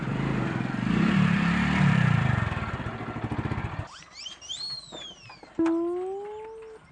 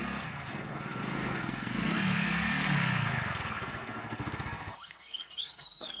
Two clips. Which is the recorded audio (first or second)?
first